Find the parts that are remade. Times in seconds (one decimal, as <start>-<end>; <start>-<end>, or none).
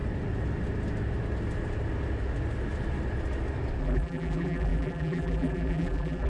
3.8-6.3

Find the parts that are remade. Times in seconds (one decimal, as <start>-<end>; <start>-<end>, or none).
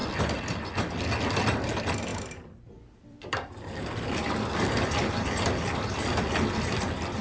0.0-0.7; 2.1-6.2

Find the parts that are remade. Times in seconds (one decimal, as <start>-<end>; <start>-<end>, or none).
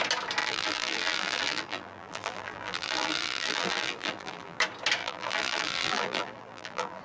0.4-4.6; 5.0-7.0